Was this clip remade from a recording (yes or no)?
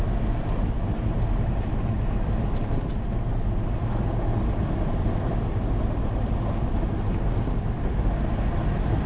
no